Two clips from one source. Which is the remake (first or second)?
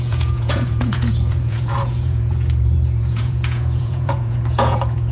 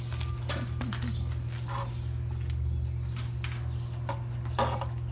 first